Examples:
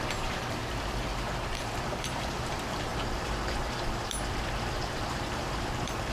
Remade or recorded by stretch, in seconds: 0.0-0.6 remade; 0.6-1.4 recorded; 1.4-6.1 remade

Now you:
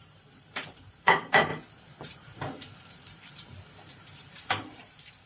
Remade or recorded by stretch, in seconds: 0.0-5.3 remade